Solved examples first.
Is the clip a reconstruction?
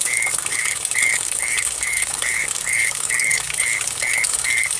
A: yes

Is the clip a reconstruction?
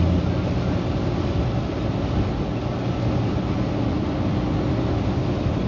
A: no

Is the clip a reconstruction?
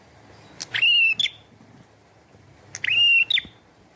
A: no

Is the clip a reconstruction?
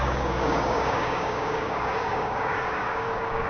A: yes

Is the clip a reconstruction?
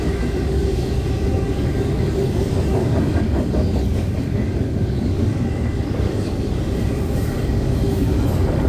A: yes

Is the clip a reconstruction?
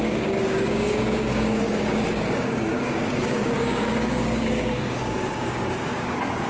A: yes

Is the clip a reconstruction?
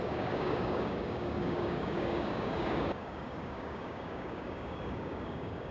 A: yes